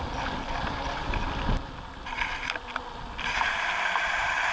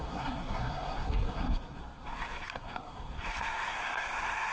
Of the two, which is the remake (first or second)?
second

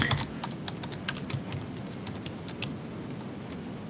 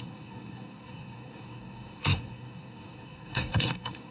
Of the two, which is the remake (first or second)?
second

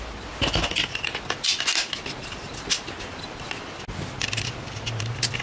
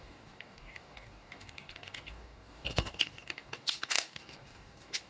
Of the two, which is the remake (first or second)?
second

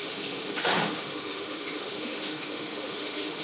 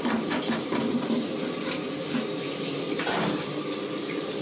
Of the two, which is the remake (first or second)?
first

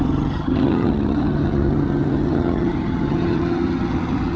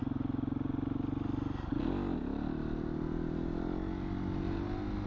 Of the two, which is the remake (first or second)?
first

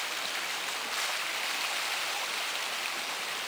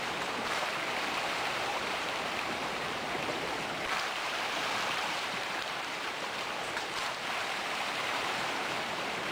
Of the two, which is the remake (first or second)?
second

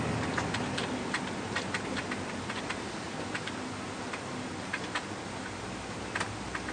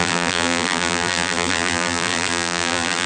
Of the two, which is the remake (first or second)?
second